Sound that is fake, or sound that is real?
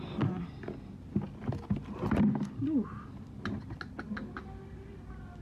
real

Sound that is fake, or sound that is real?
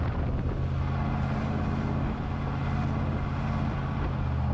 real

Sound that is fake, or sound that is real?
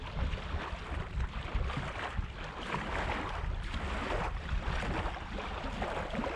real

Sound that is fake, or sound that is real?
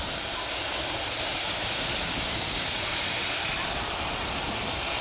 real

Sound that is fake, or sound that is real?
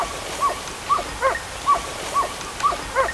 real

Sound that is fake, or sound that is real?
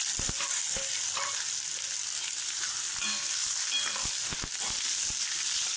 real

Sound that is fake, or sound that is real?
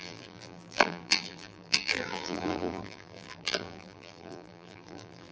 fake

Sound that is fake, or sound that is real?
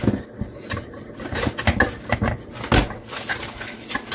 real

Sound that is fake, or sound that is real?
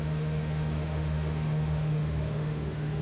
fake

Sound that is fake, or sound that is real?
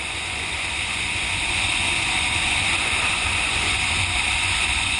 fake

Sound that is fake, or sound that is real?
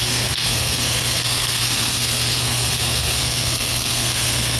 fake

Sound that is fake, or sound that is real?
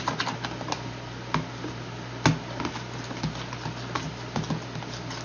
real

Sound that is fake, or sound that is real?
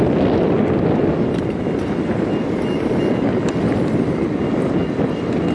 real